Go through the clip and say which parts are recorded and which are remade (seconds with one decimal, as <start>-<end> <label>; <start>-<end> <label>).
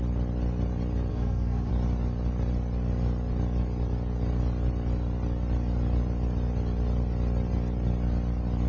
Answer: 0.0-1.1 recorded; 1.1-1.7 remade; 1.7-8.7 recorded